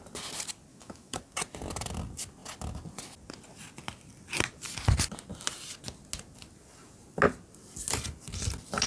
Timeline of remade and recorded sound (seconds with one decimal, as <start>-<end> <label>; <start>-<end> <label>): 0.0-0.7 recorded; 0.7-1.2 remade; 1.2-8.9 recorded

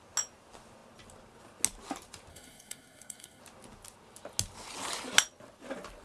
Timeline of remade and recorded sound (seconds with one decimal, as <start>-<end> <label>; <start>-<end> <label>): 0.0-2.3 recorded; 2.3-3.4 remade; 3.4-6.0 recorded